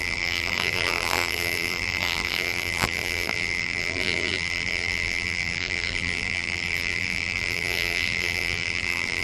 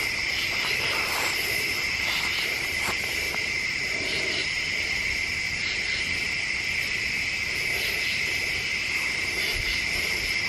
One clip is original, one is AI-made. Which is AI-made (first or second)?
first